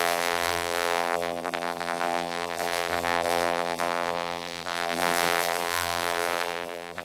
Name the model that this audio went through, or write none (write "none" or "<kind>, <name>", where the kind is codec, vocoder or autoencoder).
vocoder, BigVGAN v2